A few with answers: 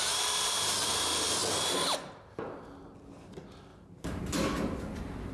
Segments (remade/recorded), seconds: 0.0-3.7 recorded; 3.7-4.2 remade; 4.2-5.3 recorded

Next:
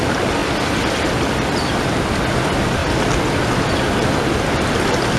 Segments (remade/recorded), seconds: 0.0-5.2 recorded

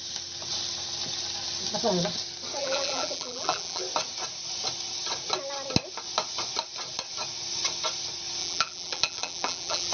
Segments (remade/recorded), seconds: 0.0-2.6 recorded; 2.6-3.8 remade; 3.8-8.4 recorded; 8.4-9.9 remade

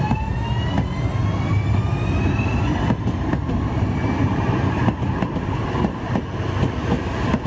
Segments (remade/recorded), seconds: 0.0-7.5 recorded

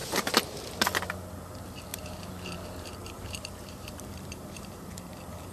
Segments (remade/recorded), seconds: 0.0-0.7 remade; 0.7-1.9 recorded; 1.9-4.7 remade; 4.7-5.5 recorded

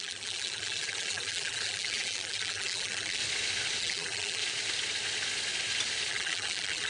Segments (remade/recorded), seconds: 0.0-3.2 remade; 3.2-3.8 recorded; 3.8-4.4 remade; 4.4-6.1 recorded; 6.1-6.9 remade